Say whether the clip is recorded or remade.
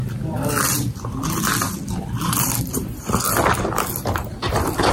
remade